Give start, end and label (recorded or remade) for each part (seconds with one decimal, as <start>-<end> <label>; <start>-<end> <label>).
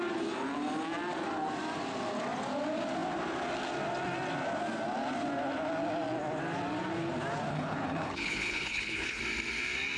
0.0-7.5 recorded; 7.5-9.2 remade; 9.2-10.0 recorded